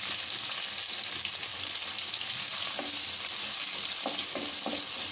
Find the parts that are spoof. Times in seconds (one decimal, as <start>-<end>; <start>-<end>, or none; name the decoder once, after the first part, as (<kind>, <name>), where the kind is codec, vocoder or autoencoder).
1.5-2.1 (vocoder, BigVGAN v2)